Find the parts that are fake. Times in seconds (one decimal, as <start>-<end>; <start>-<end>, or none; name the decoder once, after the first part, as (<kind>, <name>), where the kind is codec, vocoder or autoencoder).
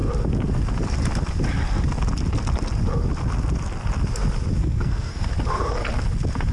4.6-5.3 (codec, SNAC)